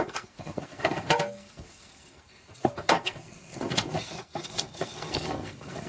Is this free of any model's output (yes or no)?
no